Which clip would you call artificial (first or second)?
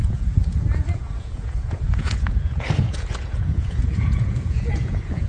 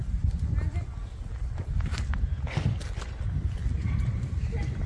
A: first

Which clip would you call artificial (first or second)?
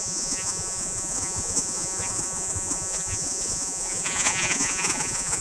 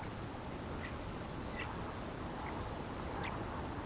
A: first